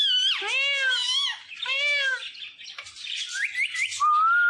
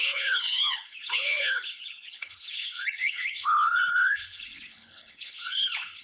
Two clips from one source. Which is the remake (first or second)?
second